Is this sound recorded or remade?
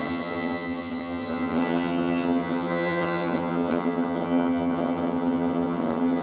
remade